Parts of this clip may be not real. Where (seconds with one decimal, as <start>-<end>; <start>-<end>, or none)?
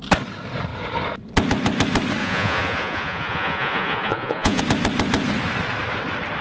2.2-4.6